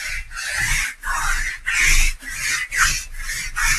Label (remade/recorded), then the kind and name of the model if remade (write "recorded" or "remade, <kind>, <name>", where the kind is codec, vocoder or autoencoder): recorded